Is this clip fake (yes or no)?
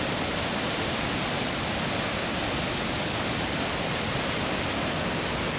no